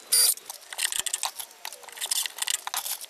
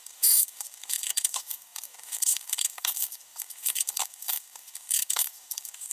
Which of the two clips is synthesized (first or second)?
second